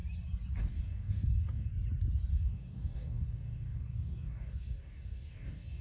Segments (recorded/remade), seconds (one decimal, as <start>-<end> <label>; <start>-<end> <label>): 0.0-0.6 recorded; 0.6-1.7 remade; 1.7-2.3 recorded; 2.3-5.8 remade